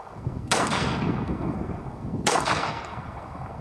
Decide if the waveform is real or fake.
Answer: fake